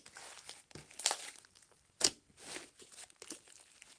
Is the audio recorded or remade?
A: recorded